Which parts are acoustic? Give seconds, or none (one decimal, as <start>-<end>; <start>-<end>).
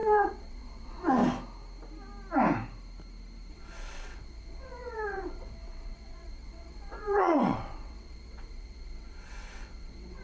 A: 1.2-3.5